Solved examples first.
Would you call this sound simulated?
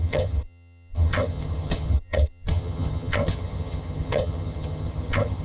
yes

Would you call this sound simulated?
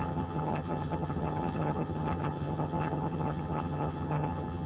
yes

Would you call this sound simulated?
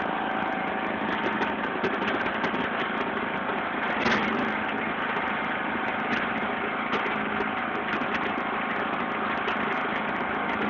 no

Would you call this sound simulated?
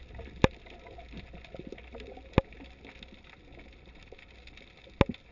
no